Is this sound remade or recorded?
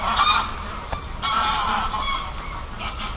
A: recorded